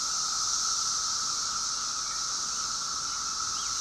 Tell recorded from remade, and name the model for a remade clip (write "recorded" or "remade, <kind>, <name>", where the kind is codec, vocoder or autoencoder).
recorded